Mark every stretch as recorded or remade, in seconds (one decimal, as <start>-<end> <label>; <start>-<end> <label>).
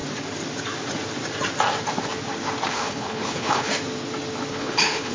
0.0-2.7 recorded; 2.7-3.7 remade; 3.7-4.5 recorded; 4.5-5.1 remade